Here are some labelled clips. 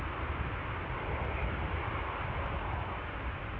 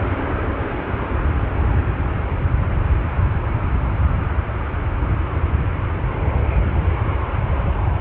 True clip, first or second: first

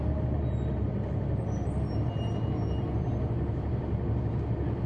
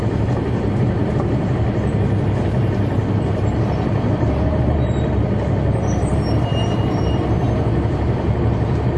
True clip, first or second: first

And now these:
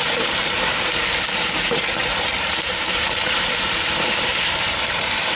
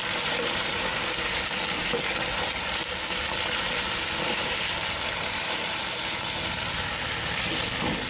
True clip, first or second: second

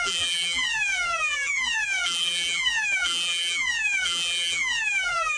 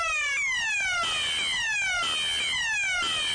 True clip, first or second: second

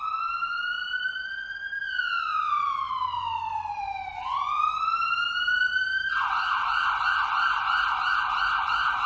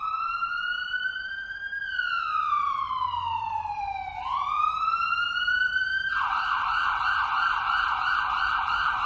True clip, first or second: first